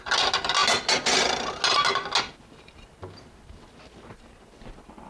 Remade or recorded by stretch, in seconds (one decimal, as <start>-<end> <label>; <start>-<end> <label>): 0.0-5.1 recorded